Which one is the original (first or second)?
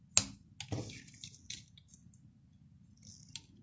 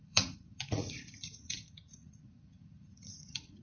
first